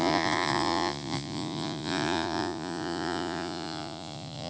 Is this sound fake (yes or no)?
yes